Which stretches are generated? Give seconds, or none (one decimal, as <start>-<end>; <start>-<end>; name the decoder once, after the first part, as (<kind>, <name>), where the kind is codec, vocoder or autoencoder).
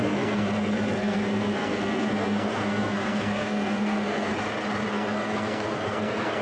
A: 0.0-4.3 (codec, SNAC); 4.9-6.4